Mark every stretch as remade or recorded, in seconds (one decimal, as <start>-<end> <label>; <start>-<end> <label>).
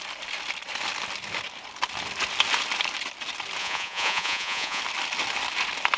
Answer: 0.0-3.6 recorded; 3.6-4.8 remade; 4.8-6.0 recorded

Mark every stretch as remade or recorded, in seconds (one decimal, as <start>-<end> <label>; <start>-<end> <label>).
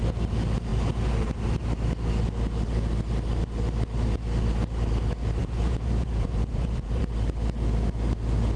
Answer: 0.0-5.4 recorded; 5.4-7.0 remade; 7.0-8.6 recorded